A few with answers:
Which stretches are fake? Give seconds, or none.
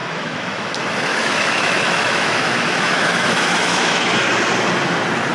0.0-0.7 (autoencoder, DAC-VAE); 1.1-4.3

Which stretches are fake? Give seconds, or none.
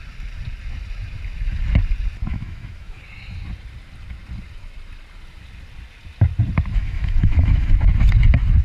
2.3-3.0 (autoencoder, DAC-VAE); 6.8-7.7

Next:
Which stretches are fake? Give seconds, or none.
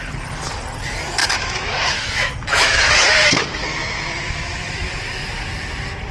1.2-4.9 (autoencoder, DAC-VAE)